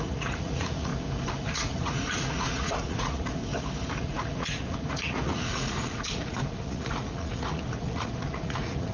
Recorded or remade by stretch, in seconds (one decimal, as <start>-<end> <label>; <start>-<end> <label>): 0.0-0.9 remade; 0.9-1.4 recorded; 1.4-3.4 remade; 3.4-4.0 recorded; 4.0-8.9 remade